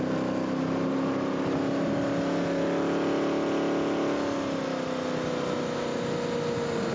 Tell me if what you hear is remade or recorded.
recorded